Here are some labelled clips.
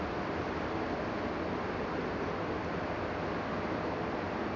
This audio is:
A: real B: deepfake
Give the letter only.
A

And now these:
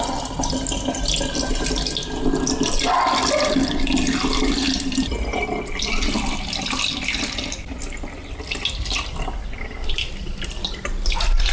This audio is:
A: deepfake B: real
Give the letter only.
B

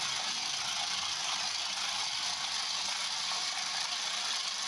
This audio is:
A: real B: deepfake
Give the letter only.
A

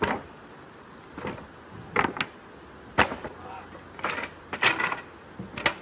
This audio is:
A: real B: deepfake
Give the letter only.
A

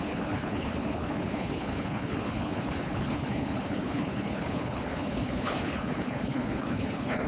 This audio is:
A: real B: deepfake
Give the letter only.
B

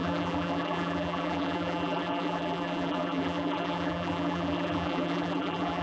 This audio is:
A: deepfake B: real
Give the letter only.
A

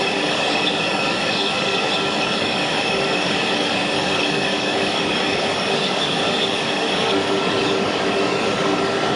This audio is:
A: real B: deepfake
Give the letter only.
B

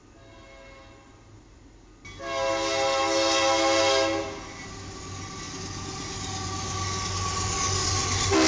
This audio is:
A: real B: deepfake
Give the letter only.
A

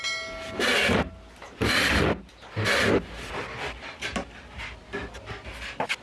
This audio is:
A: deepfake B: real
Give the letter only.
B